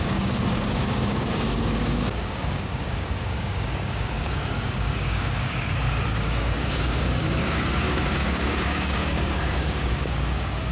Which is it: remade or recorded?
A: remade